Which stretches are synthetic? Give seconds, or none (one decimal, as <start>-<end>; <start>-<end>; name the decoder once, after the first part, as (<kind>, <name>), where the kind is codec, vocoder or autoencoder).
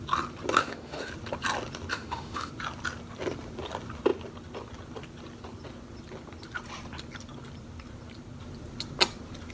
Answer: 0.6-1.1 (autoencoder, DAC-VAE); 1.9-2.5